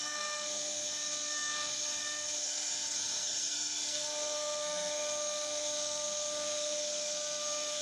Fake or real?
fake